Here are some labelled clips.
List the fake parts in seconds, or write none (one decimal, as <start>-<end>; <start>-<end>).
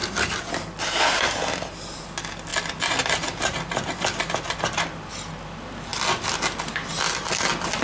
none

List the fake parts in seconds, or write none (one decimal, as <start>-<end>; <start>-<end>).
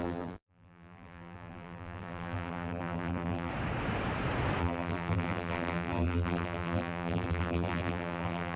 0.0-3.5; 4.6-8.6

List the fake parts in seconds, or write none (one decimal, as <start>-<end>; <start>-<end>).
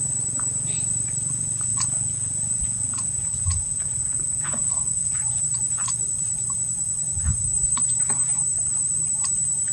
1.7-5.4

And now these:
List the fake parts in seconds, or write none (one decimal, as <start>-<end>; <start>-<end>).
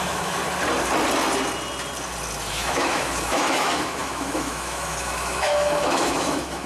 0.0-0.4; 2.5-6.7